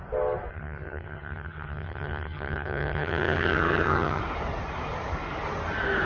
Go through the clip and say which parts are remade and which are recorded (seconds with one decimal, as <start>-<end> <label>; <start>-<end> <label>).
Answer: 0.0-0.5 recorded; 0.5-4.2 remade; 4.2-6.1 recorded